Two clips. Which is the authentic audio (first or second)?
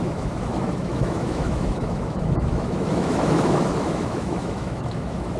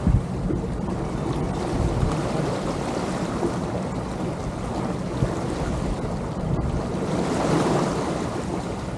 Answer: second